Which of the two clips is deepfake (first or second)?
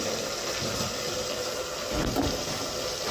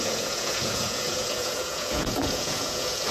second